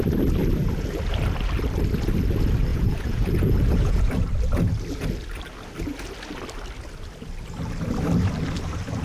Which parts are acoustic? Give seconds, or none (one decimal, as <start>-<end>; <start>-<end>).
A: 0.0-2.7; 4.1-9.0